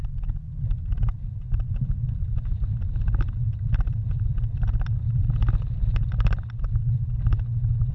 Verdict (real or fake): real